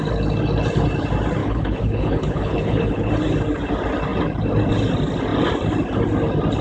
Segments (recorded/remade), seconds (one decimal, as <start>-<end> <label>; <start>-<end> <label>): 0.0-1.4 recorded; 1.4-3.1 remade; 3.1-6.6 recorded